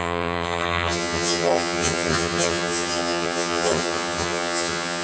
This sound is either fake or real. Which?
fake